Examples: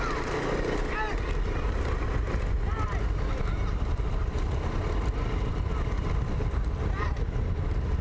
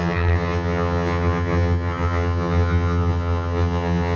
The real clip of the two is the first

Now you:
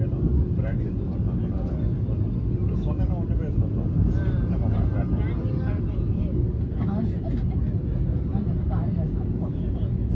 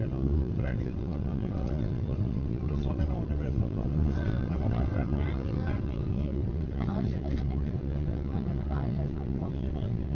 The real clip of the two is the first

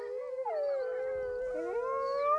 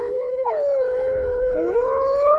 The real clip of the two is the first